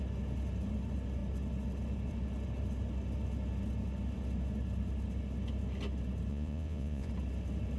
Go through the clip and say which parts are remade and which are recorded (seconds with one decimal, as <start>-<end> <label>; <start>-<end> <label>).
0.0-6.3 recorded; 6.3-7.1 remade; 7.1-7.8 recorded